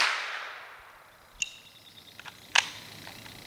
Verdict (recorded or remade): recorded